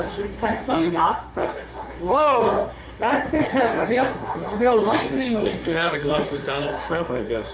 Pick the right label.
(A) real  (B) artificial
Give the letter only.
B